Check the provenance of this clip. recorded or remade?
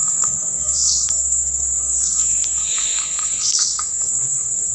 remade